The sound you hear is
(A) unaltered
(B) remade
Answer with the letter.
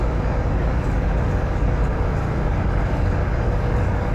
B